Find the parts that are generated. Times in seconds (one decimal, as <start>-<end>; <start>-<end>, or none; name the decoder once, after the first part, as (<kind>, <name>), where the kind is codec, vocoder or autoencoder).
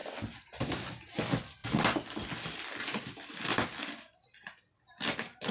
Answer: none